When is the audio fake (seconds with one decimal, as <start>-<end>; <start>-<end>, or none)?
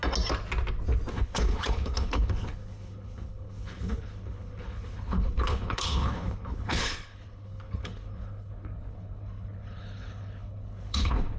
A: 1.1-11.4